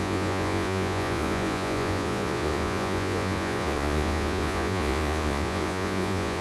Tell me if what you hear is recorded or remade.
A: remade